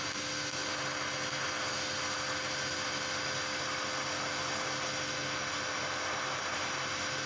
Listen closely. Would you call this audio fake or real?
real